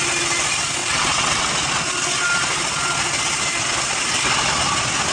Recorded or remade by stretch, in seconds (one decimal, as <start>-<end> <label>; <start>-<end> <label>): 0.0-0.8 recorded; 0.8-1.5 remade; 1.5-5.1 recorded